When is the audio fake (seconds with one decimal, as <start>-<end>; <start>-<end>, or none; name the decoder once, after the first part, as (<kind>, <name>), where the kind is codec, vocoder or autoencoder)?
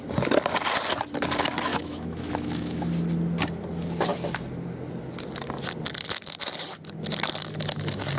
1.7-2.8 (autoencoder, DAC-VAE)